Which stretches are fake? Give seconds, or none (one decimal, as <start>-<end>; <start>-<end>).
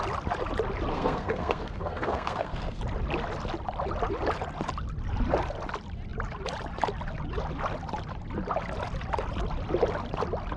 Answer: 0.9-2.8